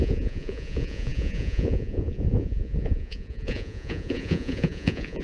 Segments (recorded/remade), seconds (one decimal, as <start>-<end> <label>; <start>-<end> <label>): 0.0-5.2 remade